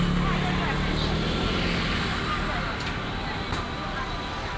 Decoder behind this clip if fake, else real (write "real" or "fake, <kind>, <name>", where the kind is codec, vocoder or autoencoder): real